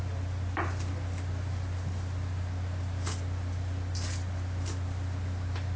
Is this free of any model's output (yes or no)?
yes